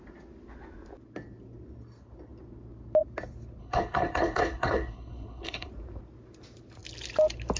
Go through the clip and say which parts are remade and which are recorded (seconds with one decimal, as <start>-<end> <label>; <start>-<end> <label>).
0.0-3.6 recorded; 3.6-5.7 remade; 5.7-7.6 recorded